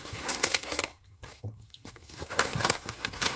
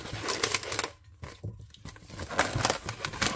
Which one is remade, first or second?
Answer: first